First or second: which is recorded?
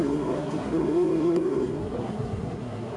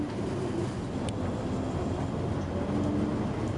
second